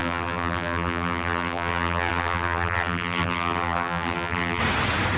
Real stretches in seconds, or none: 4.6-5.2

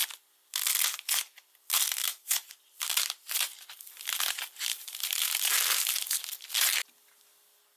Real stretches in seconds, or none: 0.0-2.0; 2.5-4.7; 6.2-7.8

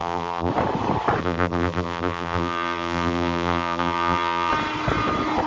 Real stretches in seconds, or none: 0.5-1.2; 4.5-5.5